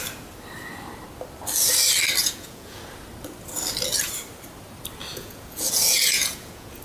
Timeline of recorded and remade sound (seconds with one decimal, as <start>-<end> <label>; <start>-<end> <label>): 0.0-2.2 recorded; 2.2-2.8 remade; 2.8-5.1 recorded; 5.1-6.8 remade